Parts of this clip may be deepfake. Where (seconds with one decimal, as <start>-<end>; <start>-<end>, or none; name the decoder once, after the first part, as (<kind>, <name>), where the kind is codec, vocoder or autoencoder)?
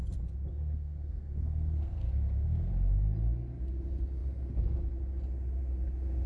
0.5-2.7 (codec, SNAC)